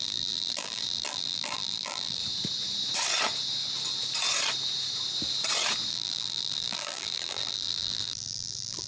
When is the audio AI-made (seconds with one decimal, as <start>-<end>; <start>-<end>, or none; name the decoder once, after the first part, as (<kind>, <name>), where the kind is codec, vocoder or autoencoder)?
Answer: 0.0-2.2 (vocoder, BigVGAN v2); 5.9-8.9